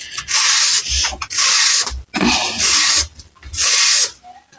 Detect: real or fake real